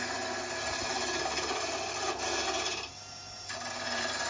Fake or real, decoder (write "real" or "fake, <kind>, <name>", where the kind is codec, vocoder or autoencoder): real